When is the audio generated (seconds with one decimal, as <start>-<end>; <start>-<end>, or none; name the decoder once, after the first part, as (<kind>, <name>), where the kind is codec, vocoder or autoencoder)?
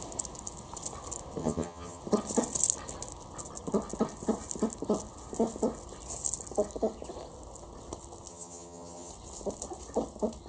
1.4-2.0 (vocoder, HiFi-GAN); 8.3-9.1